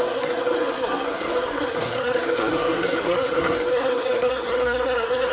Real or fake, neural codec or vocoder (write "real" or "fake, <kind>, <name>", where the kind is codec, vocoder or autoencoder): fake, codec, SNAC